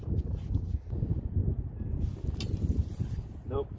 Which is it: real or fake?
real